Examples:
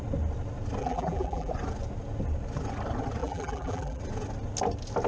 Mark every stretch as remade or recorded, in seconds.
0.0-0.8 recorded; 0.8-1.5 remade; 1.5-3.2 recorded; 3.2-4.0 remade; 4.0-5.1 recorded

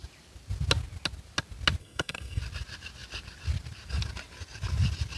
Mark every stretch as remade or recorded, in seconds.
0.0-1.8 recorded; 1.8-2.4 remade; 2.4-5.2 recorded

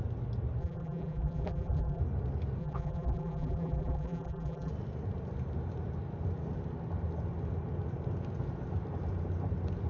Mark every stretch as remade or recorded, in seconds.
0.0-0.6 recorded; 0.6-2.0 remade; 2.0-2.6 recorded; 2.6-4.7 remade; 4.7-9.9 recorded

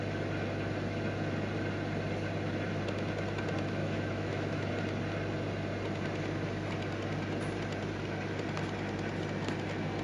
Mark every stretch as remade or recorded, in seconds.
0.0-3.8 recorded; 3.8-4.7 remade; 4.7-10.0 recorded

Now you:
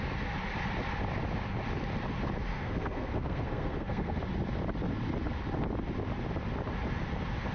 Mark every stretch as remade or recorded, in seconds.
0.0-2.5 recorded; 2.5-4.2 remade; 4.2-7.5 recorded

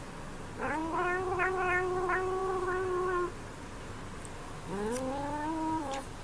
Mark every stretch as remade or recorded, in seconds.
0.0-6.2 recorded

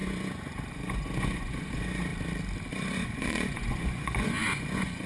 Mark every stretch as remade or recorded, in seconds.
0.0-2.1 remade; 2.1-2.7 recorded; 2.7-5.1 remade